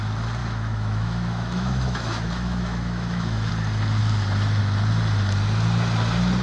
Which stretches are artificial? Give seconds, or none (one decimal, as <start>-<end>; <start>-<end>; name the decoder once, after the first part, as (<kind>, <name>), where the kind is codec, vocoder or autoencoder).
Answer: 0.4-3.5 (autoencoder, DAC-VAE)